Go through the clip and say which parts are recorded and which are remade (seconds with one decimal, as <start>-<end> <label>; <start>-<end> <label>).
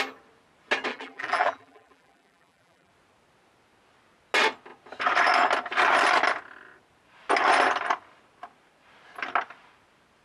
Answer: 0.0-0.9 recorded; 0.9-2.9 remade; 2.9-10.2 recorded